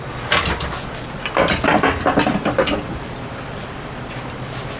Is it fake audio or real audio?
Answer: real